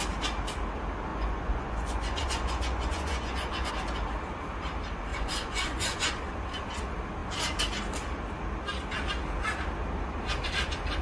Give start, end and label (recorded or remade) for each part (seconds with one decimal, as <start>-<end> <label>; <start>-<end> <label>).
0.0-1.1 recorded; 1.1-3.7 remade; 3.7-5.1 recorded; 5.1-6.2 remade; 6.2-11.0 recorded